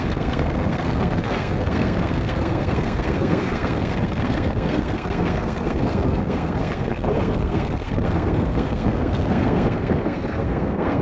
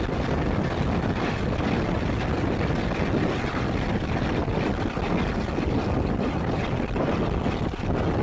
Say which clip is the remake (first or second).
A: first